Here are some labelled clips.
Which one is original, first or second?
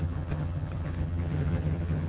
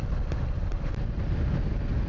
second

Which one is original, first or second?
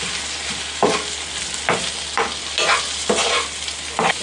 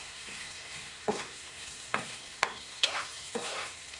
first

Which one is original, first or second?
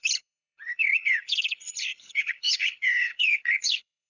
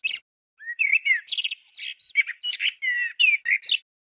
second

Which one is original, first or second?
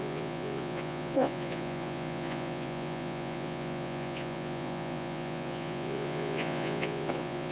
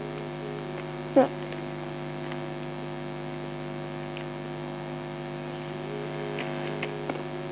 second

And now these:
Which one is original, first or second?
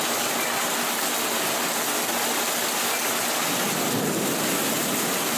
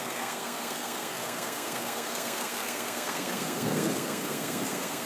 first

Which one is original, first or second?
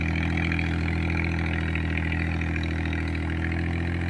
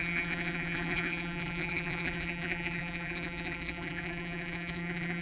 first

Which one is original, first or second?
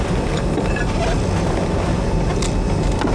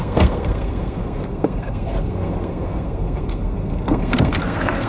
first